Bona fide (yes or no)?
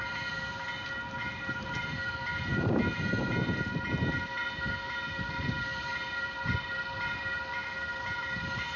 no